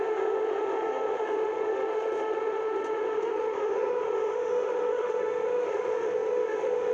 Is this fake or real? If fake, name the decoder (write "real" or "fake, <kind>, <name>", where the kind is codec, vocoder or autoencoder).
fake, autoencoder, DAC-VAE